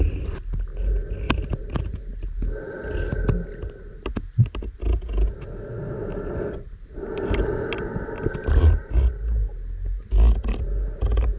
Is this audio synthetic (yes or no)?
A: no